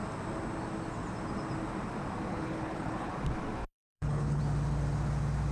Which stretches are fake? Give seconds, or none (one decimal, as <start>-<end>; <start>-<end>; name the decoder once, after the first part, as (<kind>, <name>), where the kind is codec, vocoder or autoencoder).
2.3-3.1 (codec, HILCodec); 3.6-4.4